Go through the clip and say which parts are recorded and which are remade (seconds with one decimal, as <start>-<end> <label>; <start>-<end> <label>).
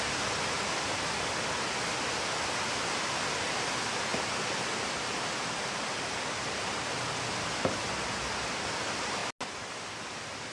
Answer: 0.0-10.5 recorded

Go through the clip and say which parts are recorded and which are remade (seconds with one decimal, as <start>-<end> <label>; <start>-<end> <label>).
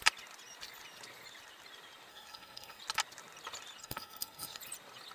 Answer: 0.0-2.1 recorded; 2.1-2.8 remade; 2.8-3.8 recorded; 3.8-4.6 remade; 4.6-5.1 recorded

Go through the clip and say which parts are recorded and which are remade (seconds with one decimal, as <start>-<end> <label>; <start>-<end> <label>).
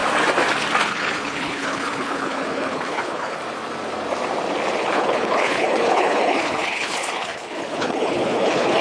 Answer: 0.0-0.8 recorded; 0.8-3.4 remade; 3.4-4.8 recorded; 4.8-8.8 remade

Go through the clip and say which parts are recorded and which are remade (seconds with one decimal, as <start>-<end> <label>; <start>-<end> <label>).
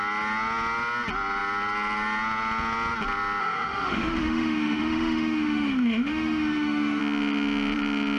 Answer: 0.0-3.4 recorded; 3.4-7.0 remade; 7.0-8.2 recorded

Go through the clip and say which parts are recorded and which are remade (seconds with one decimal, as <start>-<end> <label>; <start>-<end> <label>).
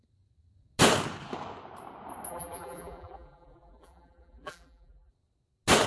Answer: 0.0-2.3 recorded; 2.3-5.1 remade; 5.1-5.9 recorded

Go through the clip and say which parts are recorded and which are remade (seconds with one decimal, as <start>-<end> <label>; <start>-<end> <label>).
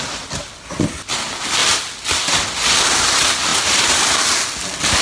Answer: 0.0-5.0 recorded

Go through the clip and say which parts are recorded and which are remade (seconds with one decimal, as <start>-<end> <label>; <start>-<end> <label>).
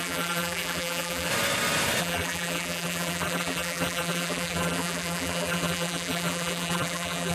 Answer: 0.0-1.3 remade; 1.3-2.0 recorded; 2.0-7.3 remade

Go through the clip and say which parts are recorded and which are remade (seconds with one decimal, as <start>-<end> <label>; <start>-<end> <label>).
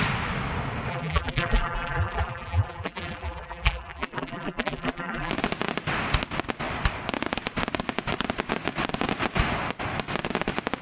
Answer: 0.0-0.9 recorded; 0.9-5.3 remade; 5.3-10.8 recorded